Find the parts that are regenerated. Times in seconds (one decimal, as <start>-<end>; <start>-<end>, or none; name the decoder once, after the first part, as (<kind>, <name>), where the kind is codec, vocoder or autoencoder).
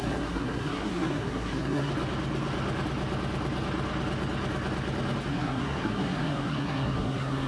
0.0-1.9 (codec, SNAC); 5.3-7.5